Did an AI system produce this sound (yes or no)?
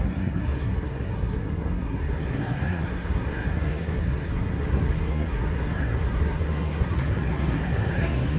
yes